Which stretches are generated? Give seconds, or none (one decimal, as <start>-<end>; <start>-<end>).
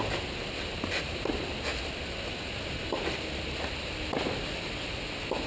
none